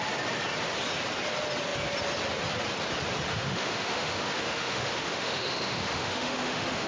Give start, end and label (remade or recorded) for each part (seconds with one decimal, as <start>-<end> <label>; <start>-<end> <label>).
0.0-3.3 recorded; 3.3-6.9 remade